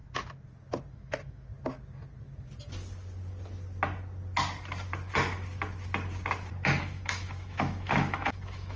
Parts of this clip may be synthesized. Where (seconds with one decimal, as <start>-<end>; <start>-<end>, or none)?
0.9-1.5; 6.8-8.8